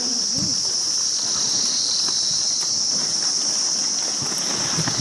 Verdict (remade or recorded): recorded